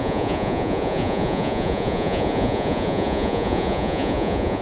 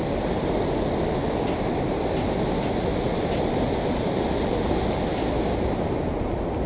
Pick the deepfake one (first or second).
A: first